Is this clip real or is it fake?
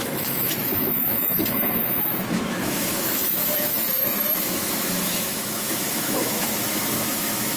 fake